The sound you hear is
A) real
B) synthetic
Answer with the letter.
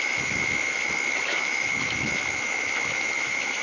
B